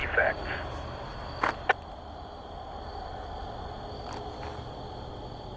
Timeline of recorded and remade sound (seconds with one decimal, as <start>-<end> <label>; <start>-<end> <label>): 0.0-5.6 recorded